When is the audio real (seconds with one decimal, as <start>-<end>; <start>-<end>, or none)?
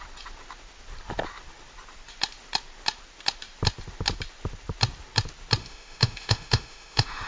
0.0-5.6